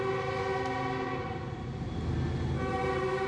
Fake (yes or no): no